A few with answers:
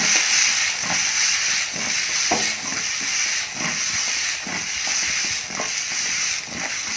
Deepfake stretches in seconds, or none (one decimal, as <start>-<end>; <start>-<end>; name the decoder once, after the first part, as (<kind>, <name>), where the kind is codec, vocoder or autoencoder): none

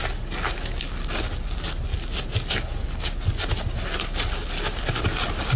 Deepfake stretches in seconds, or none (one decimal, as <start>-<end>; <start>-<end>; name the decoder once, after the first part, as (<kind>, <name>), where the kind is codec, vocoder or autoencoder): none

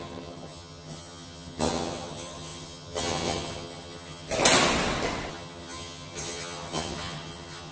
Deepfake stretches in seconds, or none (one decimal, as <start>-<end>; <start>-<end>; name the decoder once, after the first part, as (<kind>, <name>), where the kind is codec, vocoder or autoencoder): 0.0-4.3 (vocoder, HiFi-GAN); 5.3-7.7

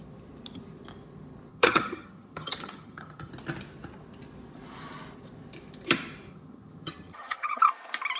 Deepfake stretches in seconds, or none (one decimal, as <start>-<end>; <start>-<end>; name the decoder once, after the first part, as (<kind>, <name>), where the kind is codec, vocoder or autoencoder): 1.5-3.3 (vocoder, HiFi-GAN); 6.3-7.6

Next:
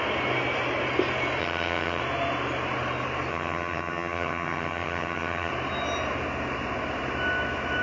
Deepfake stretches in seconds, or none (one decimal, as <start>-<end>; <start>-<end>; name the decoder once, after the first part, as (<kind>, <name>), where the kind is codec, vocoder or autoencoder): 1.4-2.0 (vocoder, HiFi-GAN); 3.3-5.5